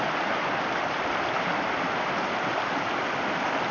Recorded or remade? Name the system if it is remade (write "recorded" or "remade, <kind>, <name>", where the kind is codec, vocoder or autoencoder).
recorded